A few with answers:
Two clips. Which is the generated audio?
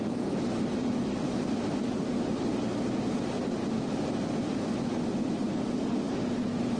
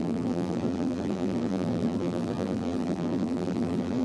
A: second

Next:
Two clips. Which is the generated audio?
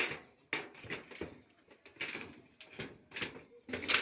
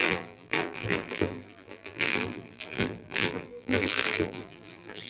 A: second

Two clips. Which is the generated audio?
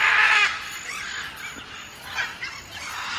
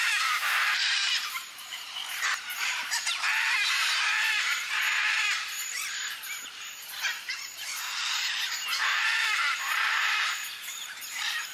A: second